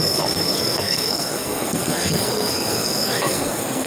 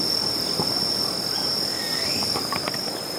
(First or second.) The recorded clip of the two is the second